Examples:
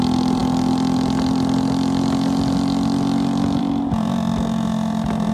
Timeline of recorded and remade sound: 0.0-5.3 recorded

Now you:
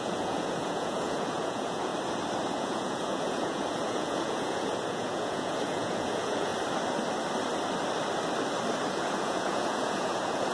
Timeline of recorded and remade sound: 0.0-1.9 remade; 1.9-2.6 recorded; 2.6-6.5 remade; 6.5-8.9 recorded; 8.9-10.5 remade

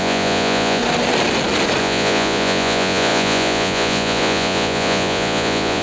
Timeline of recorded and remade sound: 0.0-0.8 remade; 0.8-1.8 recorded; 1.8-5.8 remade

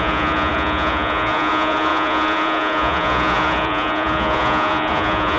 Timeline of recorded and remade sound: 0.0-5.4 remade

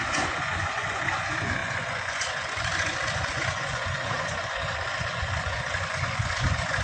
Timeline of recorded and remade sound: 0.0-6.8 remade

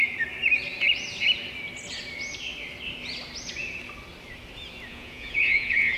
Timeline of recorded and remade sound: 0.0-4.9 recorded; 4.9-6.0 remade